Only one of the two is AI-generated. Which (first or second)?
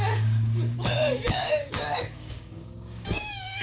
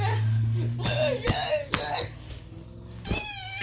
first